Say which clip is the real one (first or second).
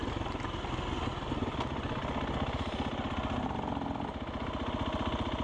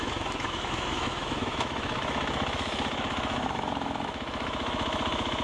first